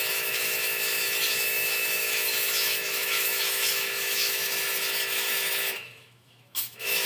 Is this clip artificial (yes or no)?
yes